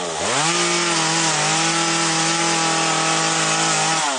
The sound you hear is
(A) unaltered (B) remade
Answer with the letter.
A